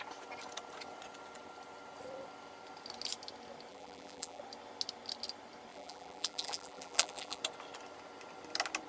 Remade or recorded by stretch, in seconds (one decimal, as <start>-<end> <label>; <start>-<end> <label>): 0.0-3.7 recorded; 3.7-4.4 remade; 4.4-5.7 recorded; 5.7-7.4 remade; 7.4-8.9 recorded